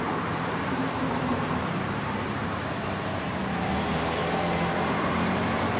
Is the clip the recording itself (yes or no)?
no